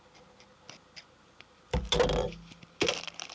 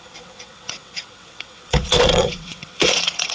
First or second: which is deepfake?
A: second